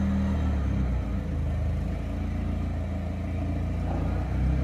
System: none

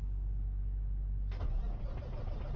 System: none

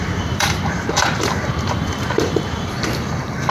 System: vocoder, BigVGAN v2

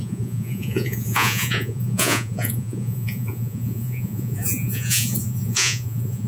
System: vocoder, Vocos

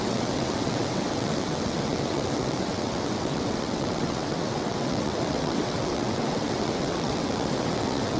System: vocoder, WaveNeXt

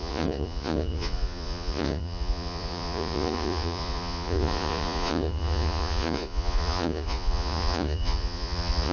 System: vocoder, Vocos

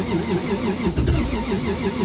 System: none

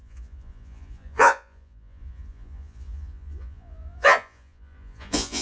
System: vocoder, Vocos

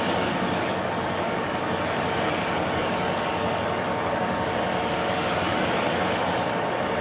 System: codec, DAC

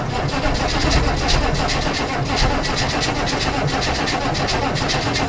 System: none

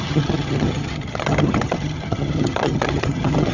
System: vocoder, HiFi-GAN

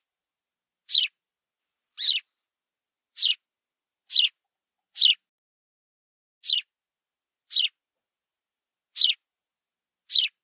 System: none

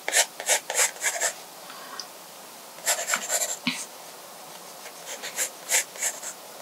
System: none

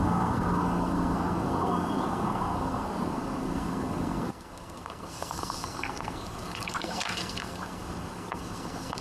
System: codec, SNAC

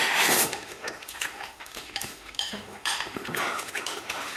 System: autoencoder, DAC-VAE